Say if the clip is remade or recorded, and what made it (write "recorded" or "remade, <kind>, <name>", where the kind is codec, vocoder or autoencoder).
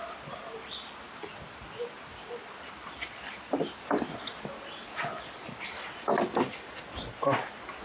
recorded